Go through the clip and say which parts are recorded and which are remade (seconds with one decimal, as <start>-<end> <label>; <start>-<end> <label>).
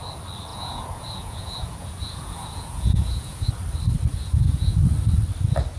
0.0-0.5 recorded; 0.5-3.5 remade; 3.5-4.1 recorded; 4.1-4.8 remade; 4.8-5.8 recorded